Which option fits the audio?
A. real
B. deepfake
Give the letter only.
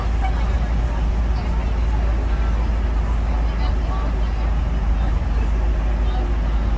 A